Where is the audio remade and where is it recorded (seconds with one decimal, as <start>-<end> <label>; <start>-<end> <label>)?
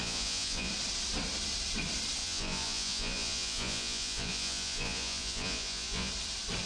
0.0-0.7 remade; 0.7-2.2 recorded; 2.2-6.1 remade; 6.1-6.7 recorded